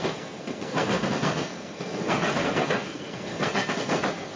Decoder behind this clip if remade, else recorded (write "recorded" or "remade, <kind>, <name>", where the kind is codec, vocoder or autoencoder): remade, codec, SNAC